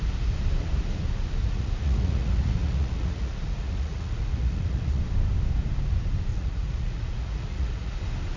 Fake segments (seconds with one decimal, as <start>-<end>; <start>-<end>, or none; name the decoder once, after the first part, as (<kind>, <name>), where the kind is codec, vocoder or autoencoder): 1.4-5.0 (vocoder, Vocos); 6.3-8.0